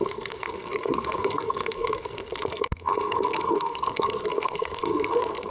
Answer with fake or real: fake